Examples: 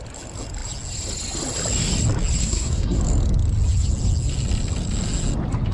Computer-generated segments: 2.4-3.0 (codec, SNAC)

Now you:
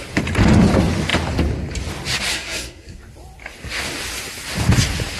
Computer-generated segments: 2.3-3.0 (codec, SNAC)

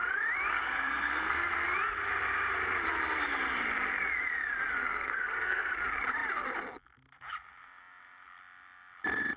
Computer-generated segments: 0.5-1.5 (codec, SNAC); 4.8-5.7